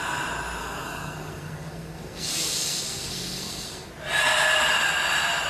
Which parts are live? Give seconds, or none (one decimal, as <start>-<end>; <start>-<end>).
0.0-0.6; 3.9-5.5